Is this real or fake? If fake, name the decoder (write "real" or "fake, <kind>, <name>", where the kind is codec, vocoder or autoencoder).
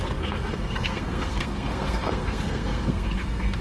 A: fake, codec, SNAC